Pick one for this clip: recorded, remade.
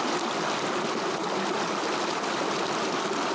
recorded